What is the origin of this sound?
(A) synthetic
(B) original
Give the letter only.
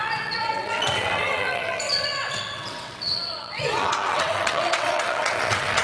A